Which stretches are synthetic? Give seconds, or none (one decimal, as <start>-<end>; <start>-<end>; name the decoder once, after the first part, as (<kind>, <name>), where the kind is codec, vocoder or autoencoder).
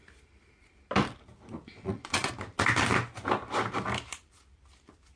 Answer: 1.6-2.3 (vocoder, Vocos)